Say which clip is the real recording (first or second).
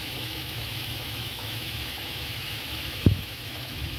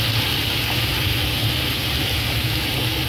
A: second